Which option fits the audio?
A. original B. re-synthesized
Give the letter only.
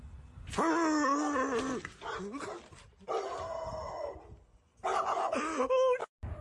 A